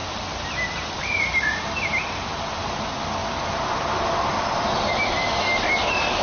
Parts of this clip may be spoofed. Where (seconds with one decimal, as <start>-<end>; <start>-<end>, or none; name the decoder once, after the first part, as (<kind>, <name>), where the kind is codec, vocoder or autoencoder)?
0.0-1.4 (vocoder, BigVGAN v2); 3.2-6.2